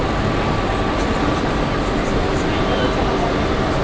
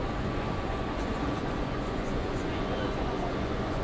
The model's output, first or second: second